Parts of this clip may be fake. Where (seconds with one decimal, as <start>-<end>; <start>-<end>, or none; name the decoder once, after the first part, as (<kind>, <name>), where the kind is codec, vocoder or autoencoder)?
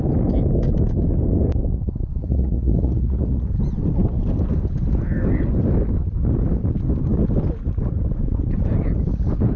2.2-3.5 (vocoder, Vocos)